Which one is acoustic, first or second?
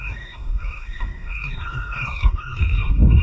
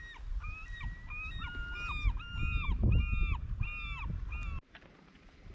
second